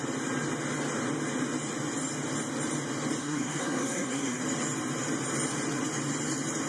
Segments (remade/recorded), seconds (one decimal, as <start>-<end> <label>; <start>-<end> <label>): 0.0-3.2 recorded; 3.2-4.4 remade; 4.4-6.7 recorded